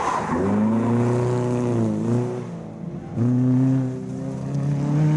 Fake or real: real